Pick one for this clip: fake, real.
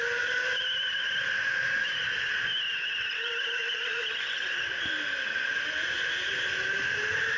real